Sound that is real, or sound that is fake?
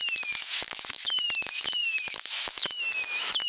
fake